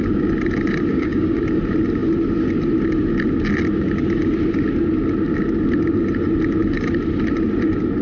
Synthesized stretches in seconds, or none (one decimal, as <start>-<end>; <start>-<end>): 0.9-1.4